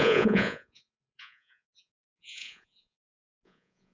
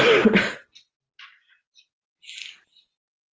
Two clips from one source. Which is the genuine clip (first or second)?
second